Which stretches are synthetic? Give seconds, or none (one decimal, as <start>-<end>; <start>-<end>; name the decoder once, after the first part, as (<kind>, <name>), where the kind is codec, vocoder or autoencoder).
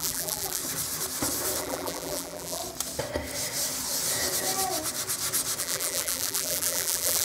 0.0-0.6 (vocoder, BigVGAN v2); 1.6-2.6; 5.6-7.2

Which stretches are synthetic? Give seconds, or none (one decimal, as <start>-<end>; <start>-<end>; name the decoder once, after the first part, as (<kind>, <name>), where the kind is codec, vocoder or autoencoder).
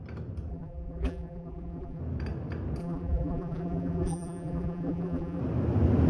0.5-2.0 (vocoder, BigVGAN v2); 2.8-5.4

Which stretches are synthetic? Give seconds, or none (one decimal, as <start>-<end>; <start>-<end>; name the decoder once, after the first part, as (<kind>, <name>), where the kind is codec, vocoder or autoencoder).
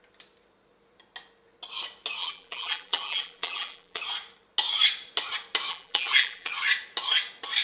2.2-4.0 (vocoder, BigVGAN v2); 5.7-6.5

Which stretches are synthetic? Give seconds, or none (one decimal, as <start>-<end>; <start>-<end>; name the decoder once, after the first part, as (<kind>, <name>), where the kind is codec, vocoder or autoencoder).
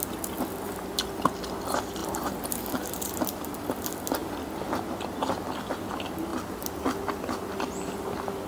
2.0-3.1 (vocoder, BigVGAN v2)